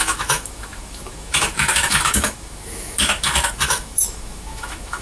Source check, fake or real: fake